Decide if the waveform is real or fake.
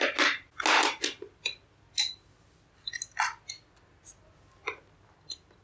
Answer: real